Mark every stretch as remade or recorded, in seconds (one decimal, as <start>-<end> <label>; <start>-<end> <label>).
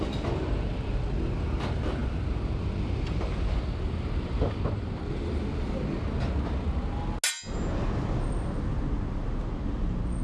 0.0-10.2 recorded